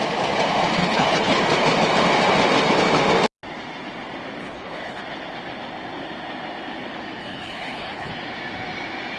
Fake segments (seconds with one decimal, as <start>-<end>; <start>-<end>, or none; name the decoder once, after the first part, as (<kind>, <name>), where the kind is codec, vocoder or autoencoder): 0.8-1.4 (codec, HILCodec); 4.4-5.0; 7.2-8.1